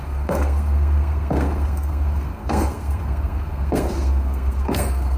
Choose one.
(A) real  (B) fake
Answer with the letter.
B